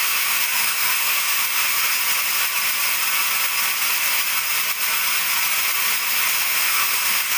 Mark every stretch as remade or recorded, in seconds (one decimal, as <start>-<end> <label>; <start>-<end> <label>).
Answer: 0.0-1.9 remade; 1.9-6.3 recorded; 6.3-7.4 remade